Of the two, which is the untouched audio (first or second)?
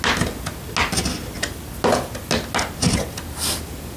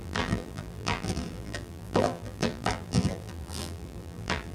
first